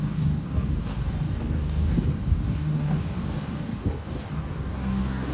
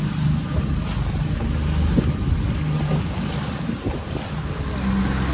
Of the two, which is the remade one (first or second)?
first